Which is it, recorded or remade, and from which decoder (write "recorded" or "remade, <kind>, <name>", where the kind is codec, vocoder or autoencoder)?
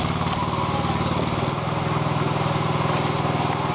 recorded